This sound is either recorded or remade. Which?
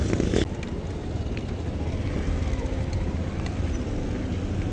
recorded